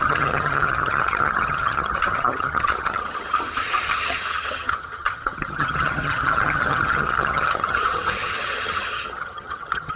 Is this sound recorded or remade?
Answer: remade